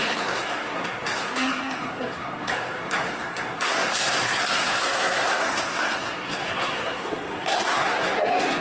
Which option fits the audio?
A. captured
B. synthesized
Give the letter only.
B